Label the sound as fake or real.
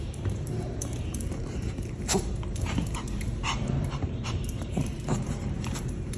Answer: fake